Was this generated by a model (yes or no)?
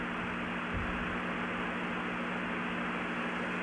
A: no